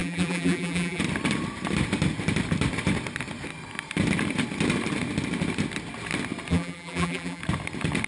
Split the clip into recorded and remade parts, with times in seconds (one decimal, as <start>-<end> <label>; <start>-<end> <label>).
0.0-1.0 remade; 1.0-6.5 recorded; 6.5-7.4 remade; 7.4-8.1 recorded